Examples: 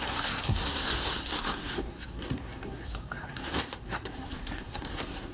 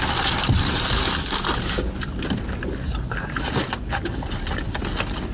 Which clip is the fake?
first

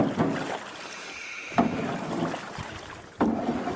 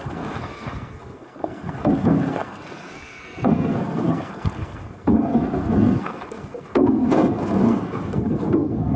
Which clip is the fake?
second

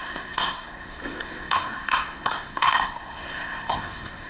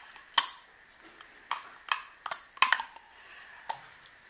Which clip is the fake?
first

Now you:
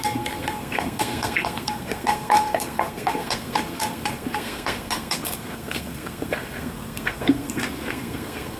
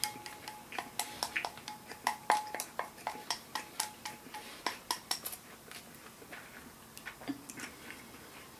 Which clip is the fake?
first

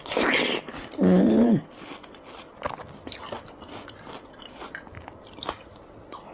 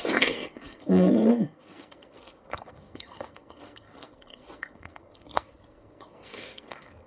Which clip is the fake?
second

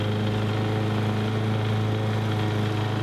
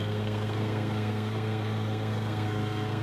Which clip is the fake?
second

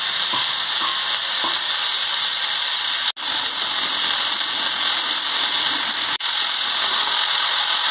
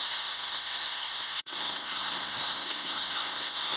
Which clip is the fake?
second